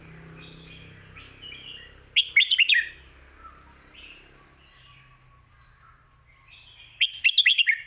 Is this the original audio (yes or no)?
yes